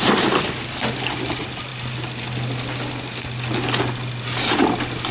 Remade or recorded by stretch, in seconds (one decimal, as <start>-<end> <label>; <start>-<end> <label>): 0.0-5.1 recorded